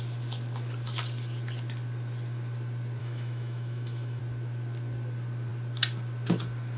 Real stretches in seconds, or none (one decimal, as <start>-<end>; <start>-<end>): 0.0-3.0; 4.2-6.8